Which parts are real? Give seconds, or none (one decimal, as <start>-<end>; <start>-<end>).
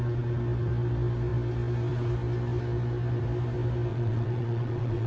0.0-3.9